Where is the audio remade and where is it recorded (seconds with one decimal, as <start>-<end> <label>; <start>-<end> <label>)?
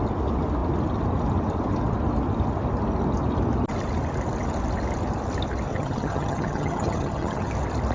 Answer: 0.0-5.7 recorded; 5.7-7.5 remade; 7.5-7.9 recorded